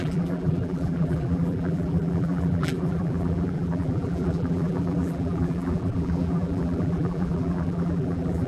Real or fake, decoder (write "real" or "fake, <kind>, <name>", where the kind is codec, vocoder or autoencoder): fake, vocoder, BigVGAN v2